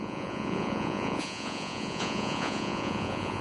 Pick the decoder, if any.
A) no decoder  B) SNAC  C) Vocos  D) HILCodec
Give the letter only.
C